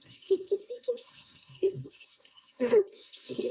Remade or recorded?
remade